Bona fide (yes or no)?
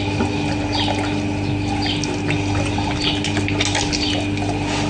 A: yes